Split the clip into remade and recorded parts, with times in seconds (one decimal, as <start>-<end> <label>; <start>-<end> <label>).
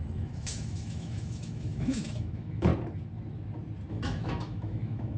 0.0-2.7 remade; 2.7-3.9 recorded; 3.9-5.2 remade